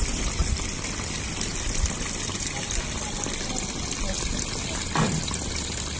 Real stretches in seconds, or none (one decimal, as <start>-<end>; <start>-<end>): 0.4-0.9; 1.5-4.0